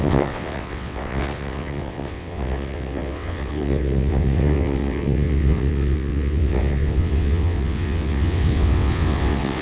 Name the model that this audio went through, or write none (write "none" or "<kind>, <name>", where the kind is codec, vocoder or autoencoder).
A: vocoder, WaveNeXt